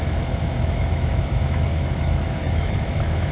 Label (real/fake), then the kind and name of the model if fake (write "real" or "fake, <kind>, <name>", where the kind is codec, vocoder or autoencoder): fake, autoencoder, DAC-VAE